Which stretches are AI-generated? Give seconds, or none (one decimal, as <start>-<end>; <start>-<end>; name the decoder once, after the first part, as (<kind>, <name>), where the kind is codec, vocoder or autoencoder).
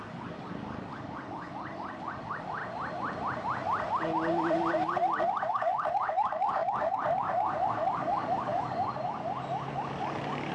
0.0-2.6 (codec, DAC); 5.5-8.9; 9.7-10.5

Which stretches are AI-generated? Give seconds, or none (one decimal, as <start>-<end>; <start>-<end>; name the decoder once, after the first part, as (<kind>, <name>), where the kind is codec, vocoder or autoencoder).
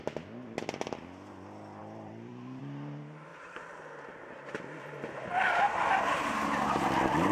1.8-2.6 (vocoder, BigVGAN v2)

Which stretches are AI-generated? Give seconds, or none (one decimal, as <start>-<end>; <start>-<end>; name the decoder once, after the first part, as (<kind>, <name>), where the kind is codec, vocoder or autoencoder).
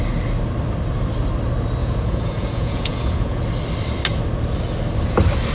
1.8-3.4 (vocoder, Vocos)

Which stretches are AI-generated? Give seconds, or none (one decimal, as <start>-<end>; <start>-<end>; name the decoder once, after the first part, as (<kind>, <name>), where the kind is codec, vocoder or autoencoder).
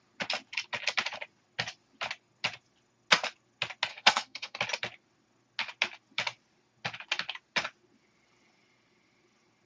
3.9-4.6 (codec, SNAC)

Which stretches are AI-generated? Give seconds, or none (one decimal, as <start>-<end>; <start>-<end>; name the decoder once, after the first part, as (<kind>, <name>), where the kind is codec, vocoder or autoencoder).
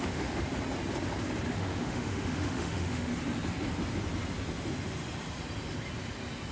0.0-0.5 (autoencoder, DAC-VAE); 1.5-3.1